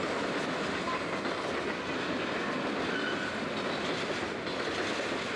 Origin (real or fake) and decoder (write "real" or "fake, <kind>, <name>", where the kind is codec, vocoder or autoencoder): real